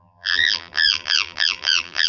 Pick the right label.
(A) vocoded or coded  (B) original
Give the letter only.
A